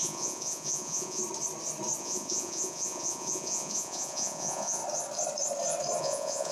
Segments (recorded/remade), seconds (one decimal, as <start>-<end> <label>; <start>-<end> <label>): 0.0-1.2 remade; 1.2-2.0 recorded; 2.0-4.8 remade; 4.8-6.0 recorded; 6.0-6.5 remade